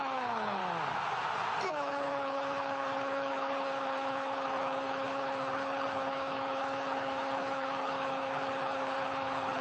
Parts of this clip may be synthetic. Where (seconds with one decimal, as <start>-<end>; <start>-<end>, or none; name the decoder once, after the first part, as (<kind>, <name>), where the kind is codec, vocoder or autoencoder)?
0.0-0.6 (codec, HILCodec); 1.7-9.6